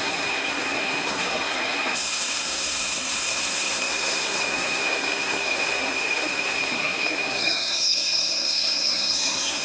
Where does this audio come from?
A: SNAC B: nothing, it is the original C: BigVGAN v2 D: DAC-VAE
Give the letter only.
A